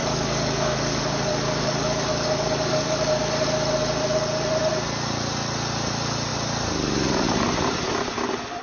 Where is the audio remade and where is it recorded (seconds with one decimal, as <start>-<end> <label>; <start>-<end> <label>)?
0.0-3.1 remade; 3.1-8.6 recorded